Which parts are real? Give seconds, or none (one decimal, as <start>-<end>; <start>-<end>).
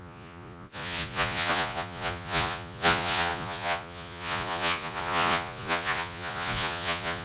none